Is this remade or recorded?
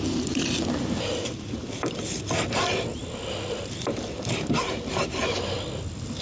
recorded